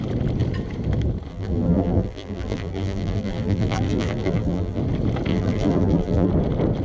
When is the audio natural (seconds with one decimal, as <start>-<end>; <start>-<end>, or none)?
0.0-1.3; 4.8-5.3; 6.3-6.8